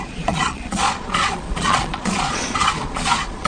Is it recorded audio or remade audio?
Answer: remade